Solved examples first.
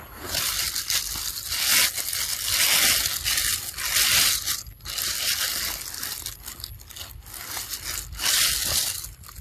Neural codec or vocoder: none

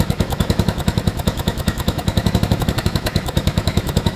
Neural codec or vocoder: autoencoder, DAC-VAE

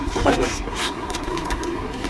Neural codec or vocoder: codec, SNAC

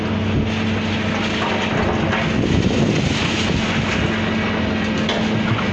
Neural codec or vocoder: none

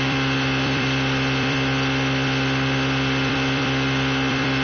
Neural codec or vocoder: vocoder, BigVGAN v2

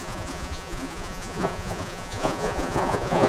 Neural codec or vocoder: vocoder, Vocos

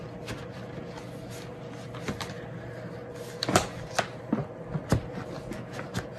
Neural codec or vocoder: none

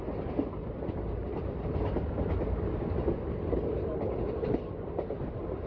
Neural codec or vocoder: none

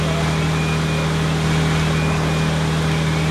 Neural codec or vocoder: none